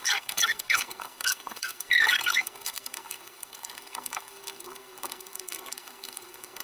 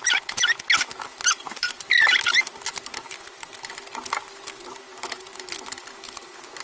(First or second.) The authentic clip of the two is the second